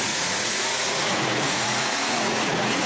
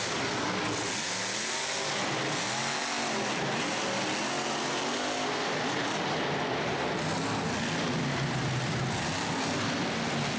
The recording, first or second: second